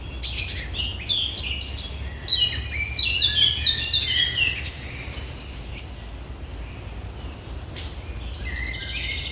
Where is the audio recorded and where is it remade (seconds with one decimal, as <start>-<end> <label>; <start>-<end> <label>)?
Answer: 0.0-9.3 recorded